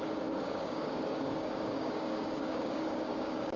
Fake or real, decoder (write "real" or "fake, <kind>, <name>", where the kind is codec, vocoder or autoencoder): fake, codec, DAC